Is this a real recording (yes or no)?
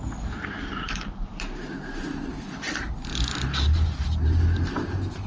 yes